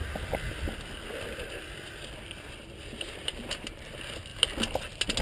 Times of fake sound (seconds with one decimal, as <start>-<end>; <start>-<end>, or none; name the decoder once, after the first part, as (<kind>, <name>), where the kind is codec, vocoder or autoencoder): 3.3-3.9 (vocoder, BigVGAN v2)

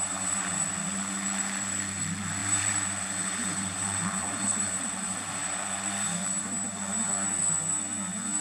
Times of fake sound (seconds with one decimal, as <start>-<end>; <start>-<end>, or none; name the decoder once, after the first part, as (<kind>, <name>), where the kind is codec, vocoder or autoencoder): 2.4-7.3 (vocoder, BigVGAN v2)

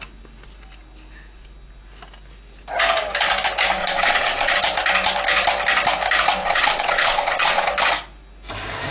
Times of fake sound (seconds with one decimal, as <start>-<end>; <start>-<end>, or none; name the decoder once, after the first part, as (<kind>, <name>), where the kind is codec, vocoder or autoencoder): 3.8-4.6 (vocoder, Vocos); 6.4-7.7

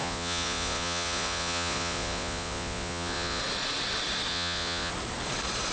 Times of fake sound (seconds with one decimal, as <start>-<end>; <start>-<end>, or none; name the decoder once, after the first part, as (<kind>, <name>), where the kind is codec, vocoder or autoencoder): 0.0-3.4 (vocoder, Vocos); 4.3-4.9

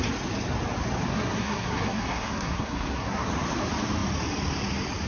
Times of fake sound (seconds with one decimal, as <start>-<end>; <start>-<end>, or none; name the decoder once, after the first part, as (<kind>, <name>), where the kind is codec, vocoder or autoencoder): 1.1-3.3 (codec, SNAC)

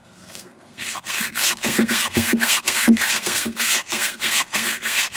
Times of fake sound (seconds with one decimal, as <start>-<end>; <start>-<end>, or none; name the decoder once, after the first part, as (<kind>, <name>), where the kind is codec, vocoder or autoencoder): 0.0-5.2 (codec, SNAC)

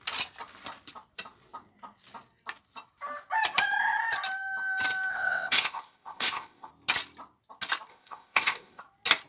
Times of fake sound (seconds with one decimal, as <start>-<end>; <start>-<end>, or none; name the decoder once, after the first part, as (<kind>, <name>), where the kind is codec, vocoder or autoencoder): 5.1-6.7 (codec, ZipCodec); 7.9-8.8

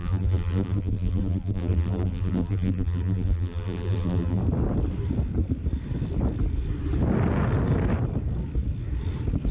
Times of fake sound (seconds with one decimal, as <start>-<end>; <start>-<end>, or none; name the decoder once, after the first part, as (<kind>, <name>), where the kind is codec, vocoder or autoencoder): 0.0-4.4 (vocoder, BigVGAN v2)